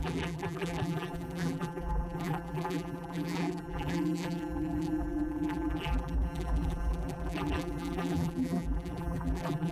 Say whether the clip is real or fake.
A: fake